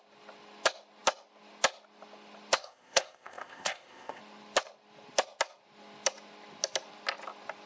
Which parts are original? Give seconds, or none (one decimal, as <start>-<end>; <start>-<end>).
0.0-2.6; 4.2-7.7